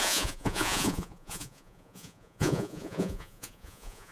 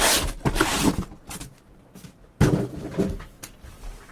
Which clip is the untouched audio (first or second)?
second